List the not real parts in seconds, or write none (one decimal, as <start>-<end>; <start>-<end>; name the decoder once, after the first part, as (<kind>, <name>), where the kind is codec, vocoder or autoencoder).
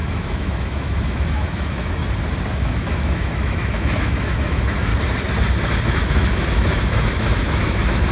0.0-2.0 (autoencoder, DAC-VAE); 2.5-4.9; 5.9-8.1